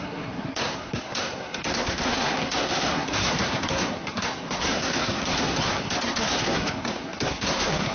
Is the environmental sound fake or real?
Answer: fake